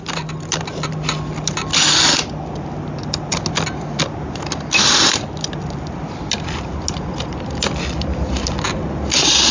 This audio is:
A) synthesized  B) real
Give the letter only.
B